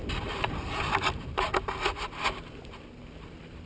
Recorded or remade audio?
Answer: recorded